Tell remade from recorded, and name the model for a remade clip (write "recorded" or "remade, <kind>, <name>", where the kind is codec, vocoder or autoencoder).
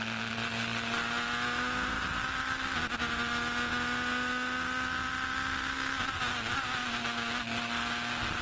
recorded